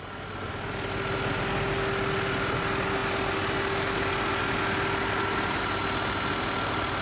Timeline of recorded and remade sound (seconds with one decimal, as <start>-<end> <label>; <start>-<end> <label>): 0.0-7.0 recorded